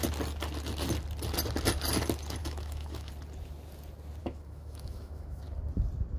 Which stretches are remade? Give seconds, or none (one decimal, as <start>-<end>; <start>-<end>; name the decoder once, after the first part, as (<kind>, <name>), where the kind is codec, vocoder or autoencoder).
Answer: 2.4-3.1 (autoencoder, DAC-VAE); 4.2-5.4